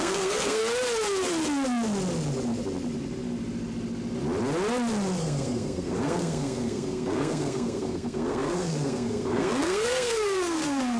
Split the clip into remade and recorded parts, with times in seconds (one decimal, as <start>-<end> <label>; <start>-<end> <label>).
0.0-0.6 remade; 0.6-5.2 recorded; 5.2-11.0 remade